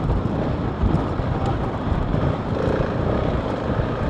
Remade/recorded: remade